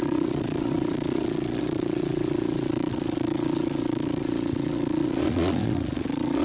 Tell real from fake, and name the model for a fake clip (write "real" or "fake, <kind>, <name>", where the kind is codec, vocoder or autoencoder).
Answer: fake, vocoder, Vocos